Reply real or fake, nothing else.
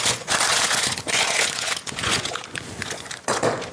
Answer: fake